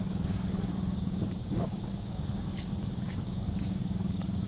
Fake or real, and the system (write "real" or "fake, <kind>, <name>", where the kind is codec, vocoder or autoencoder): fake, codec, DAC